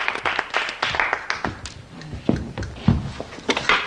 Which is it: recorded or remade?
recorded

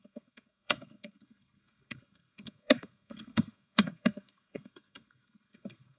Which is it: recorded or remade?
remade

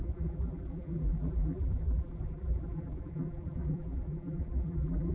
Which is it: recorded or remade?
remade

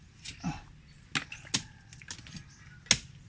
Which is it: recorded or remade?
recorded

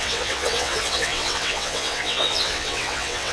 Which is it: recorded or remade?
remade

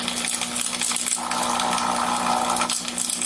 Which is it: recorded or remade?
recorded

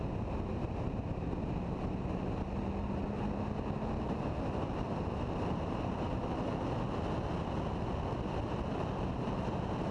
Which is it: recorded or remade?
recorded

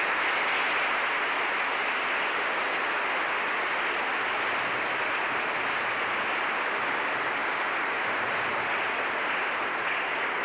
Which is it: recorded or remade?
recorded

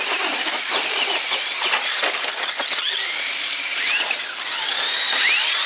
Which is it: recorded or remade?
recorded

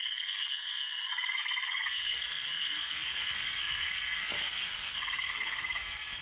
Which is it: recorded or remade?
remade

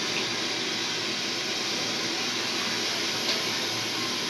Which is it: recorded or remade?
recorded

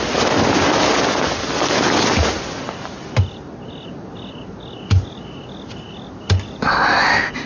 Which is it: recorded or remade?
recorded